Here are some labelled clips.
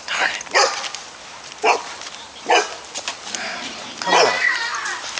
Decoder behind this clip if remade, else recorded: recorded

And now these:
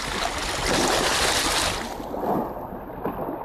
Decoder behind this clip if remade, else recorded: recorded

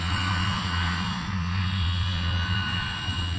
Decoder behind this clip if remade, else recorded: remade, vocoder, Vocos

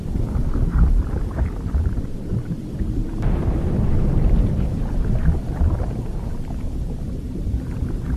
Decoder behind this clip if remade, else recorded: recorded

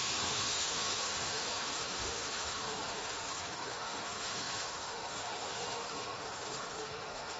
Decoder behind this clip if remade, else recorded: remade, autoencoder, DAC-VAE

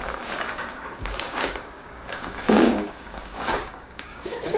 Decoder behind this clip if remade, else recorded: remade, codec, DAC